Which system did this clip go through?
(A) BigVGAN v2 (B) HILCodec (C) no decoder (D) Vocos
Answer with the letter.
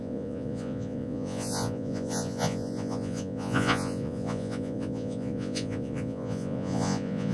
D